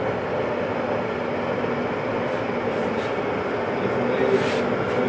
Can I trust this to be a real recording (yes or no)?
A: yes